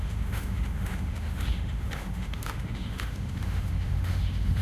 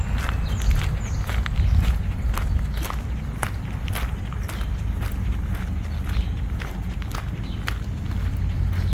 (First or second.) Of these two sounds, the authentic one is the second